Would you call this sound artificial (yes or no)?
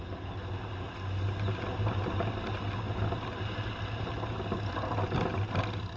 no